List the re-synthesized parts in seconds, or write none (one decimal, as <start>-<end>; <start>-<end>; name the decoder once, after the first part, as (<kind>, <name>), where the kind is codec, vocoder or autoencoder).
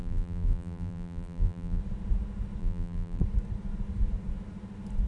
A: 0.0-1.8 (vocoder, BigVGAN v2); 2.6-3.2